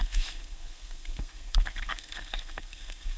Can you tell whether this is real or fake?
fake